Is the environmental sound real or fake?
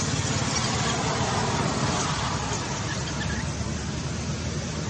real